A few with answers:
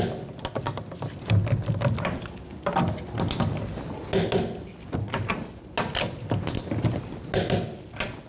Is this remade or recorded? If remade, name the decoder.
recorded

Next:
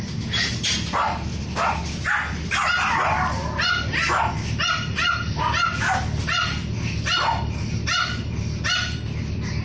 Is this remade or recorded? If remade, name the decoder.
recorded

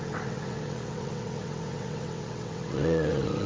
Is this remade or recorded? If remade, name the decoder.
remade, vocoder, WaveNeXt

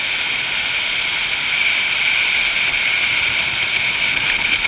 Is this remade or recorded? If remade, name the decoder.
recorded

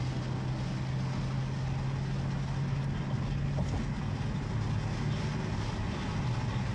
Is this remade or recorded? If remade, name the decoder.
recorded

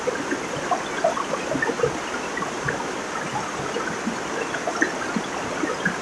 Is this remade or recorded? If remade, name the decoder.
recorded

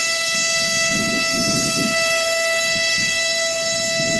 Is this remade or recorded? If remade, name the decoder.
recorded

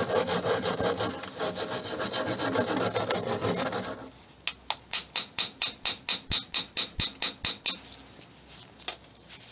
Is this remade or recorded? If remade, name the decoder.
recorded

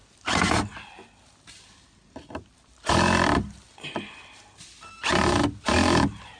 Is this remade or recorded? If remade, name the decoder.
recorded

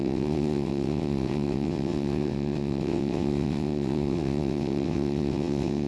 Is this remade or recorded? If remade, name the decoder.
remade, vocoder, WaveNeXt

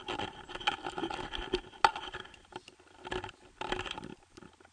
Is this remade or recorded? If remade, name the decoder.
recorded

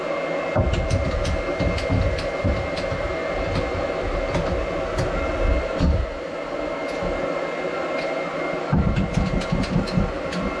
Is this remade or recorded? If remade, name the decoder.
recorded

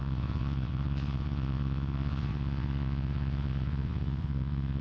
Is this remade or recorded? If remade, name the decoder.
remade, vocoder, WaveNeXt